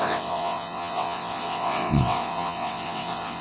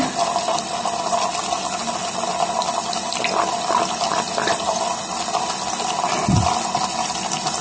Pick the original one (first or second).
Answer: second